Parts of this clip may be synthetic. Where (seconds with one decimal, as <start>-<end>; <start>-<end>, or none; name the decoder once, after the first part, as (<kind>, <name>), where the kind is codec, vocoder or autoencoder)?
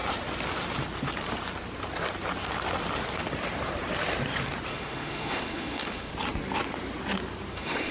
4.7-6.1 (autoencoder, DAC-VAE); 7.5-7.9